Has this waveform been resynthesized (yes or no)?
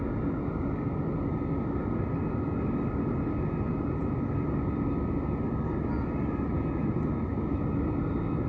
no